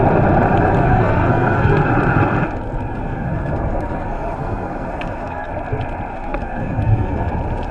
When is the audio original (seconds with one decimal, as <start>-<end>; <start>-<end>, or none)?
0.0-0.8; 1.9-2.9; 5.5-6.1; 7.3-7.7